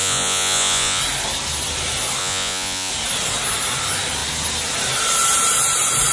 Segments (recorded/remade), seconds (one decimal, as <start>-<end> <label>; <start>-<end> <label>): 0.0-1.0 remade; 1.0-2.2 recorded; 2.2-2.9 remade; 2.9-6.1 recorded